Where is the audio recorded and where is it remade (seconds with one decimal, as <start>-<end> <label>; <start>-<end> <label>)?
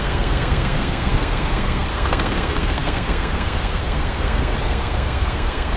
0.0-5.8 remade